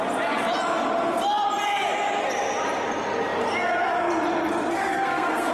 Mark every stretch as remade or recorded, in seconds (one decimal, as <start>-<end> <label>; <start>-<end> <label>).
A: 0.0-4.8 recorded; 4.8-5.5 remade